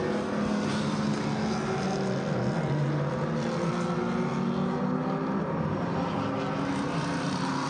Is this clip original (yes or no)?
yes